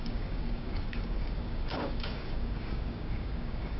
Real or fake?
fake